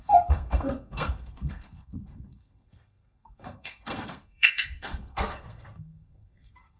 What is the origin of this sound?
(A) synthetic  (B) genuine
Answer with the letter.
A